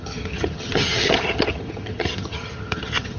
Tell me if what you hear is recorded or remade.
remade